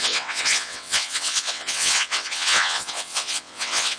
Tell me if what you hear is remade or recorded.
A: remade